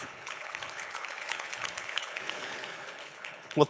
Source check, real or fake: fake